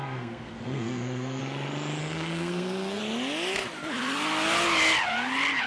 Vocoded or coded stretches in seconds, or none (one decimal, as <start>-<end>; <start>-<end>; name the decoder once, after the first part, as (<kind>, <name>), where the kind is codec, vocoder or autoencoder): 0.0-1.4 (codec, SNAC); 2.0-3.0

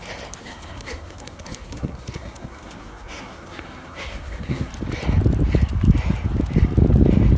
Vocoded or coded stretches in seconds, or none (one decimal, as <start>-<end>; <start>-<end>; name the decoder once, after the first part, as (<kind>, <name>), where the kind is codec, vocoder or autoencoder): 0.4-4.7 (codec, SNAC)

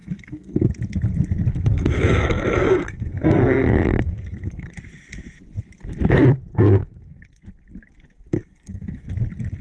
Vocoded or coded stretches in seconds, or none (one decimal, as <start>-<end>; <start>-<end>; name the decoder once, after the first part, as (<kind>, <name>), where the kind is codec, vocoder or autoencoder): 0.0-0.7 (codec, SNAC); 1.5-4.7; 6.5-7.2; 8.3-9.1

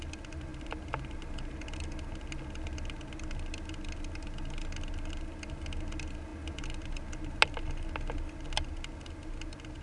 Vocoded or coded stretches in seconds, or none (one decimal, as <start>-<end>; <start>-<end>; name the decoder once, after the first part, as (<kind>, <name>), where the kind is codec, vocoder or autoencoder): none

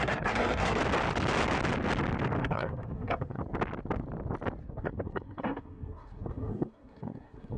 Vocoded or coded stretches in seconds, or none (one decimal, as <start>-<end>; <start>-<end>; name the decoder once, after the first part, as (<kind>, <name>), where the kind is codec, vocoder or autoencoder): 0.0-0.8 (codec, SNAC); 2.4-3.4; 4.6-7.6